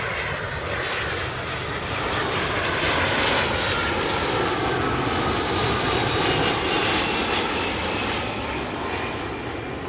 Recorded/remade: recorded